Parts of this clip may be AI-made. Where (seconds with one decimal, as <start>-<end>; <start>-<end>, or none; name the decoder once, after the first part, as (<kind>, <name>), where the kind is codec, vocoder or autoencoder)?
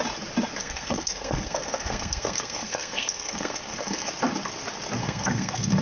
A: 0.6-4.1 (codec, SNAC); 5.0-5.8